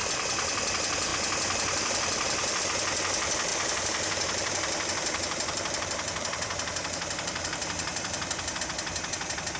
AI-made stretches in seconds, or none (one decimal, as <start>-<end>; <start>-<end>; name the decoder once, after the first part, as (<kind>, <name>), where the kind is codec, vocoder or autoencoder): 3.5-8.6 (vocoder, BigVGAN v2)